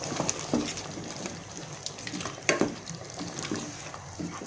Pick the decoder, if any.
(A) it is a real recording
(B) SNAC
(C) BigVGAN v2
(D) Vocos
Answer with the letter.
C